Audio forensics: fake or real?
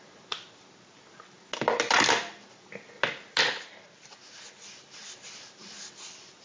real